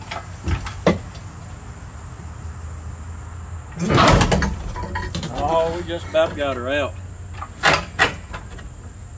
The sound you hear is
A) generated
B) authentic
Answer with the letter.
B